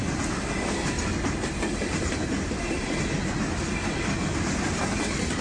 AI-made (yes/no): no